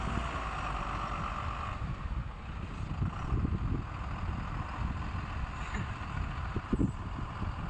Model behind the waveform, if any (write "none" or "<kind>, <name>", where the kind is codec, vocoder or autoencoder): none